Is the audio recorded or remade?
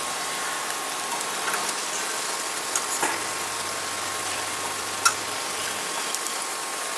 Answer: recorded